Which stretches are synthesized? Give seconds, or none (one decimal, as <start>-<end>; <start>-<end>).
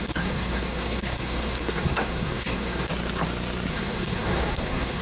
0.0-2.9; 3.7-5.0